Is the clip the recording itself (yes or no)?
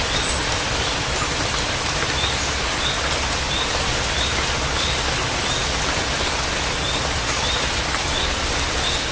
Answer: yes